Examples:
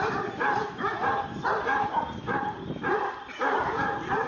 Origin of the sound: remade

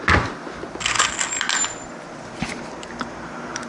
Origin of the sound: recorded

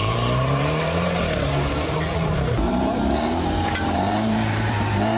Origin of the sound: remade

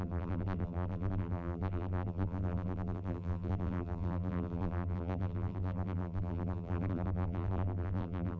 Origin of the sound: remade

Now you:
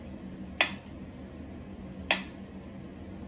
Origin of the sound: recorded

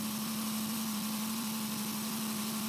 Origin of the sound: remade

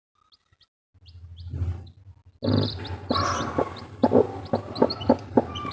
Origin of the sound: recorded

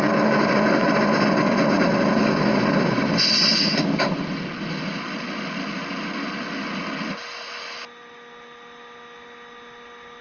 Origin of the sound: recorded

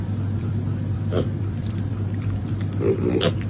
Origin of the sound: remade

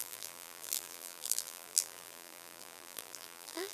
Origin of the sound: remade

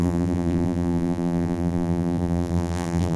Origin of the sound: remade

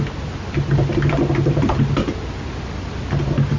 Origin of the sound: recorded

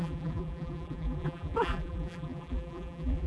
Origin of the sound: remade